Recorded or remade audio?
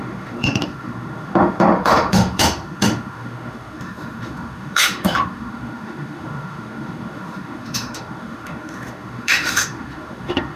remade